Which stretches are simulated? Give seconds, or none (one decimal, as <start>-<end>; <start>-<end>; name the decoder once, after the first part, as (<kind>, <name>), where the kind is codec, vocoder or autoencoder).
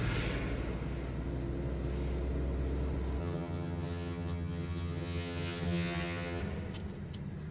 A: 3.2-6.4 (vocoder, HiFi-GAN)